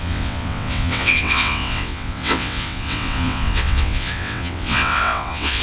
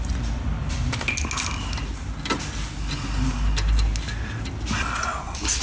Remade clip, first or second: first